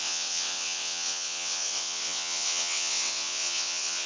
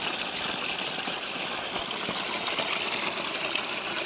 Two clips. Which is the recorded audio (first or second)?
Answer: second